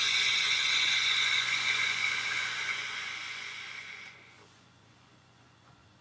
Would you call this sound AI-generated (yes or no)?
yes